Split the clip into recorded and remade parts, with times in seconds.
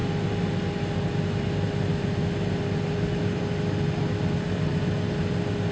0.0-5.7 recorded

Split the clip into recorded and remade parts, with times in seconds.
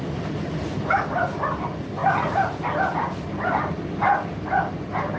0.0-2.0 recorded; 2.0-3.8 remade; 3.8-5.2 recorded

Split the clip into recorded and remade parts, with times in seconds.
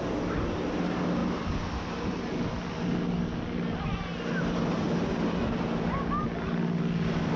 0.0-7.4 recorded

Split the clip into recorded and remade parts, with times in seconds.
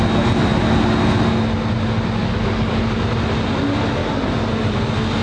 0.0-2.2 recorded; 2.2-2.8 remade; 2.8-4.0 recorded; 4.0-4.6 remade; 4.6-5.2 recorded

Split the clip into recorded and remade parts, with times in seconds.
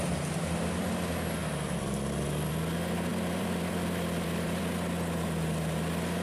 0.0-1.4 recorded; 1.4-2.5 remade; 2.5-3.1 recorded; 3.1-4.6 remade; 4.6-6.2 recorded